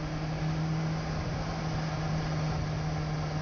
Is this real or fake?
real